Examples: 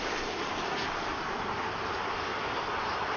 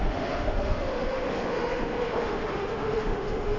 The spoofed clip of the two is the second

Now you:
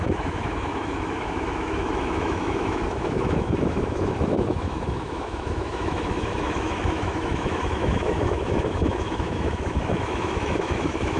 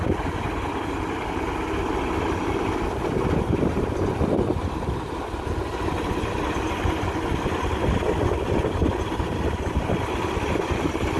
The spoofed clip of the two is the first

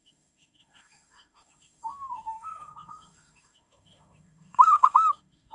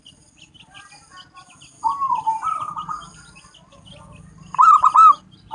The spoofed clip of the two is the first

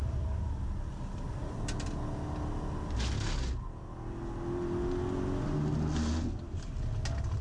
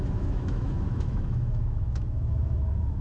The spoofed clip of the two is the second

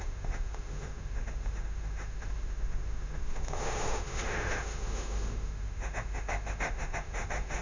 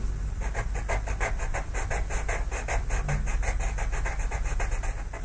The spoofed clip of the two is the first